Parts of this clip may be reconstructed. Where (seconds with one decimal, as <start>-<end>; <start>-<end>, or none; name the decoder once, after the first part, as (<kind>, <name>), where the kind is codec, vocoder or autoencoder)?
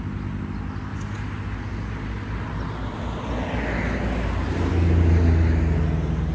none